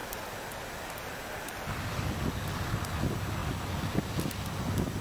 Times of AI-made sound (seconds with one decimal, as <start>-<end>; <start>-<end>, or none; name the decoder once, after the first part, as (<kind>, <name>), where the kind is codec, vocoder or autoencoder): 0.0-3.0 (vocoder, BigVGAN v2)